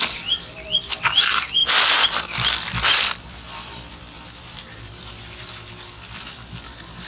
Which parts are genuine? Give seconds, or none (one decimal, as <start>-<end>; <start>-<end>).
none